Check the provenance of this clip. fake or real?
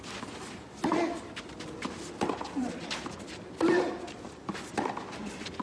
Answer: real